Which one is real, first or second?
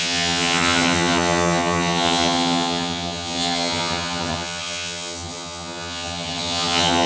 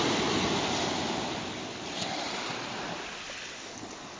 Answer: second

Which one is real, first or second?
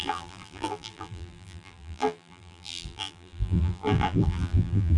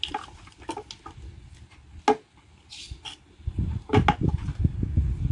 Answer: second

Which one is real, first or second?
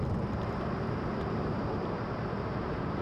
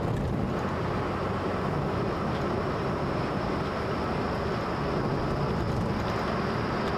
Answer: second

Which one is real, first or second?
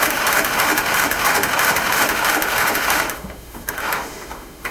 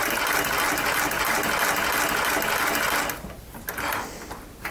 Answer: second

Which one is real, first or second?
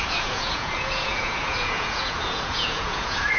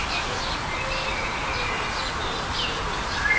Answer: second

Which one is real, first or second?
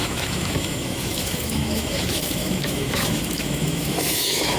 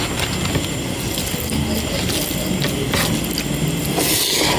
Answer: second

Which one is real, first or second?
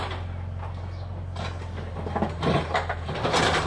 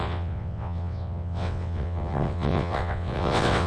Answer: first